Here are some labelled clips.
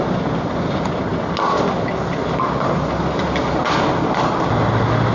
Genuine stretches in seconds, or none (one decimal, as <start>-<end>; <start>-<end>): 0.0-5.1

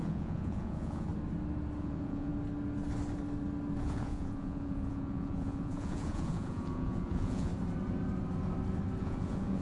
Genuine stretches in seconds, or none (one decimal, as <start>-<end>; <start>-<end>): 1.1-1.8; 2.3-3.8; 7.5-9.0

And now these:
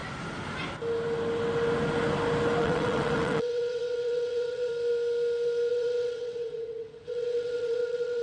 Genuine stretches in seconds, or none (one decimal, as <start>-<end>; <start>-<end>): 0.0-2.6; 4.7-5.7

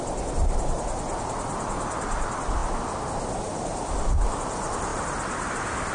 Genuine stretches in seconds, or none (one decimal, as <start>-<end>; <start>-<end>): 0.0-5.9

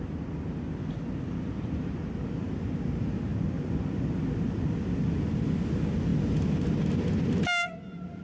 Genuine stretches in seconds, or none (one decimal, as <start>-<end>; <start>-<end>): 0.0-8.2